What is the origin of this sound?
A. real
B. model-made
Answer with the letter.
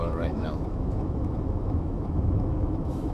B